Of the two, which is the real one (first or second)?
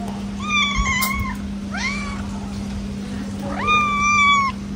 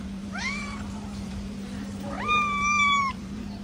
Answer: first